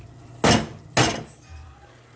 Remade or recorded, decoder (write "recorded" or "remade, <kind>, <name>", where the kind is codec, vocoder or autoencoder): recorded